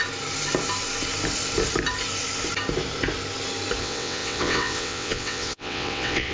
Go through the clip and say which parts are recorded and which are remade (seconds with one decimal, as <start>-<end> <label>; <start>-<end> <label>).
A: 0.0-3.8 recorded; 3.8-6.3 remade